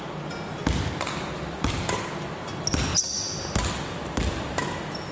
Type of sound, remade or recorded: recorded